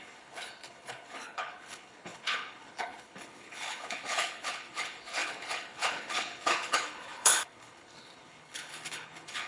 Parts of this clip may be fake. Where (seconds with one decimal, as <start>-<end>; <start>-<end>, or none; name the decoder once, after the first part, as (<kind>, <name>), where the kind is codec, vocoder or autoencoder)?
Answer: 0.0-9.5 (codec, HILCodec)